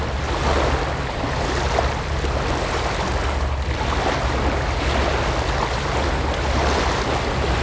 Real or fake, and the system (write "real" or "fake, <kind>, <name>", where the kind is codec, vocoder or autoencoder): real